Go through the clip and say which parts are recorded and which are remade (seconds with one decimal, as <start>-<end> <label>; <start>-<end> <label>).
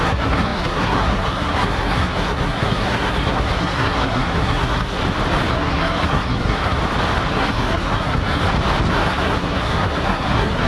0.0-5.0 remade; 5.0-5.5 recorded; 5.5-6.8 remade; 6.8-7.3 recorded; 7.3-8.4 remade; 8.4-8.9 recorded; 8.9-10.7 remade